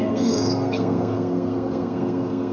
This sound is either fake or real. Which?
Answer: fake